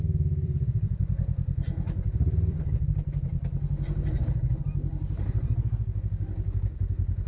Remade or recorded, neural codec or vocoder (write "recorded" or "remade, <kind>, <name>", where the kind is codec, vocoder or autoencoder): remade, vocoder, BigVGAN v2